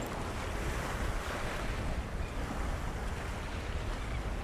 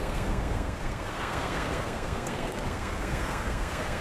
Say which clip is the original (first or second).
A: first